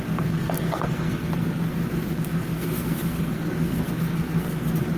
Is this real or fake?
fake